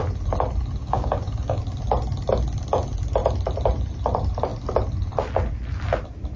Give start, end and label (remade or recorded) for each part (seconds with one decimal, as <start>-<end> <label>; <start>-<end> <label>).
0.0-0.8 recorded; 0.8-1.6 remade; 1.6-6.4 recorded